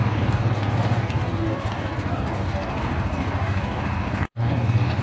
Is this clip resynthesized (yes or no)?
yes